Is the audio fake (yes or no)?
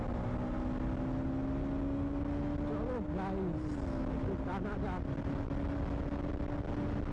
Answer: no